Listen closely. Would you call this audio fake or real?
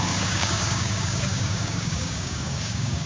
fake